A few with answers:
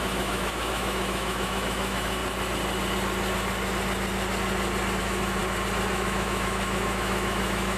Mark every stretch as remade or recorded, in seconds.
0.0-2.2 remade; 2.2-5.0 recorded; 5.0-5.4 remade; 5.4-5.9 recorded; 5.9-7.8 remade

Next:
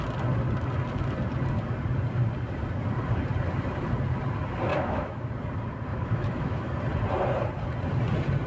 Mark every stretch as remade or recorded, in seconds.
0.0-4.7 recorded; 4.7-5.3 remade; 5.3-5.9 recorded; 5.9-6.7 remade; 6.7-8.5 recorded

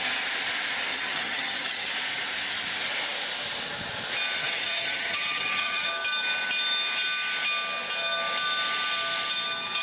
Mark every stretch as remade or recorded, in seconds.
0.0-0.9 recorded; 0.9-1.9 remade; 1.9-4.4 recorded; 4.4-5.9 remade; 5.9-9.8 recorded

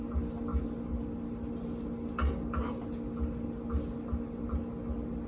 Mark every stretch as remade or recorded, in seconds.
0.0-5.3 recorded

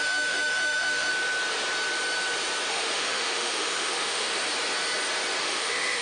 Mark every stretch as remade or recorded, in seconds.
0.0-1.1 remade; 1.1-2.7 recorded; 2.7-4.4 remade; 4.4-5.4 recorded; 5.4-6.0 remade

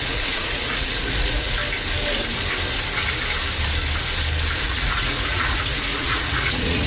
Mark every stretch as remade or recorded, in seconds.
0.0-1.6 remade; 1.6-4.6 recorded; 4.6-6.9 remade

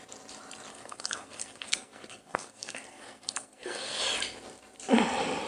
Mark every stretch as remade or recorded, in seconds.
0.0-0.7 recorded; 0.7-4.0 remade; 4.0-5.5 recorded